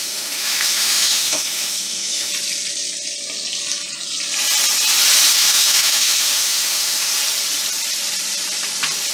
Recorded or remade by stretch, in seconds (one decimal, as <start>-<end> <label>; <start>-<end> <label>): 0.0-2.3 remade; 2.3-5.3 recorded; 5.3-7.1 remade; 7.1-9.1 recorded